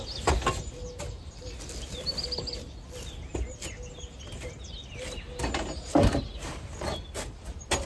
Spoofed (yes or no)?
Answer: no